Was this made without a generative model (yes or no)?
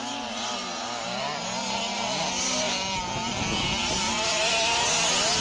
yes